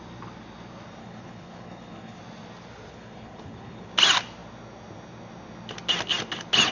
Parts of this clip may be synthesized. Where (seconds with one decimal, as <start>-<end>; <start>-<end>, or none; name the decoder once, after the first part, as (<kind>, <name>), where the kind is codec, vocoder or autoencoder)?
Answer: 1.0-2.2 (codec, HILCodec); 2.9-3.9